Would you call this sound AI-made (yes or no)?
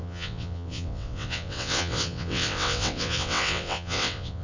yes